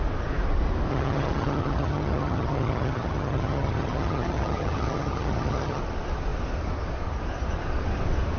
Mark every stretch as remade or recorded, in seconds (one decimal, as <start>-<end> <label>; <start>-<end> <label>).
0.0-0.9 recorded; 0.9-5.8 remade; 5.8-8.4 recorded